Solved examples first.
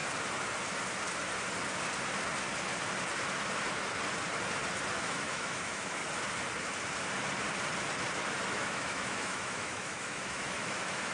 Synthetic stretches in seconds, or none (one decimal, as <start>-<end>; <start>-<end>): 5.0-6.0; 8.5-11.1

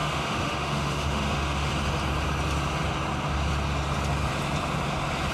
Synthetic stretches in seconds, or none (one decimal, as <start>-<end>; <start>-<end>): 0.0-1.7

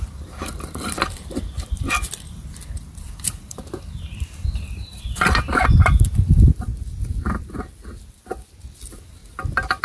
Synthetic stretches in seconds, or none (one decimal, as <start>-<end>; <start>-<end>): 0.0-6.7; 8.1-9.2

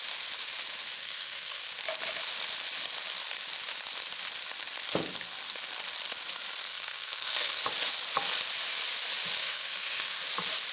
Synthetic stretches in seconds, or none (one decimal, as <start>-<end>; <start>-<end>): 1.0-1.6; 6.7-7.6; 9.4-10.2